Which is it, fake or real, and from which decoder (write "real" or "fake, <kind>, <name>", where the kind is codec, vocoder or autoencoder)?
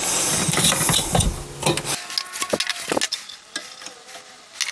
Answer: real